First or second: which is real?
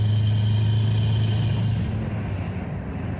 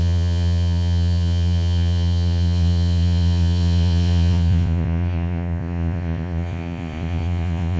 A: first